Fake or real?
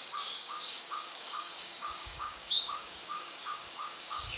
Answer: fake